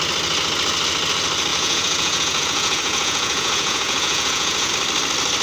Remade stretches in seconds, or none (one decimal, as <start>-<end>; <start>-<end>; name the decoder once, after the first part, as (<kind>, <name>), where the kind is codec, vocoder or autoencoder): 1.5-4.7 (vocoder, Vocos)